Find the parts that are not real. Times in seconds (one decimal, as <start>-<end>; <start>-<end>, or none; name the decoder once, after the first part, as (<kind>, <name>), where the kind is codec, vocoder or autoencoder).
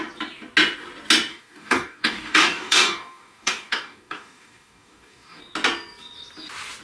1.3-5.4 (codec, DAC)